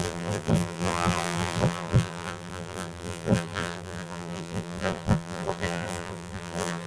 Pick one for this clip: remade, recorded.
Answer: remade